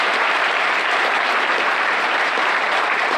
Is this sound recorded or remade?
remade